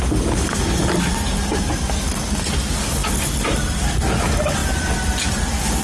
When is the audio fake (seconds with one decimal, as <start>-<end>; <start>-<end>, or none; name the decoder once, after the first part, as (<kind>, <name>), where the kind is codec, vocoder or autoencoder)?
none